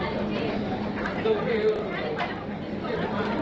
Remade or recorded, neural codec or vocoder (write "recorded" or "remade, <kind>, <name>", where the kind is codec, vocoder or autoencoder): recorded